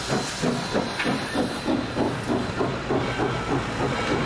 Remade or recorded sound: recorded